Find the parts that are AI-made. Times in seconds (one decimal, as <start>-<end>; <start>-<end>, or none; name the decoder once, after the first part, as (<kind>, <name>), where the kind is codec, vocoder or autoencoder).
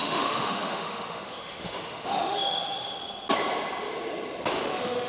0.0-3.0 (autoencoder, DAC-VAE); 4.5-5.1